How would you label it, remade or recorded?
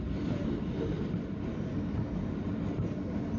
recorded